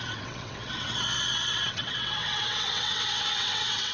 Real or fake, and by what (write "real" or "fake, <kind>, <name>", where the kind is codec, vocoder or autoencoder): fake, vocoder, WaveNeXt